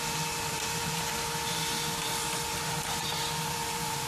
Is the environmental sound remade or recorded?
remade